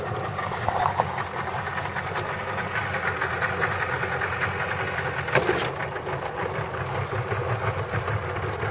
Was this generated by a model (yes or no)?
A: no